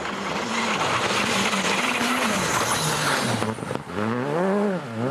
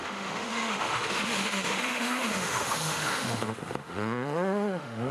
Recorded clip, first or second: first